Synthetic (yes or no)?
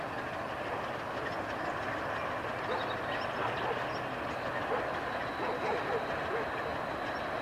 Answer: no